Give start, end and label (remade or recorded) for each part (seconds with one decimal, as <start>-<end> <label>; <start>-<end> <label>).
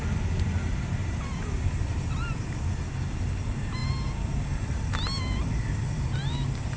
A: 0.0-6.8 recorded